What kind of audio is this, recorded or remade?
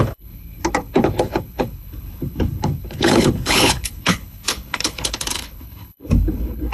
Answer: remade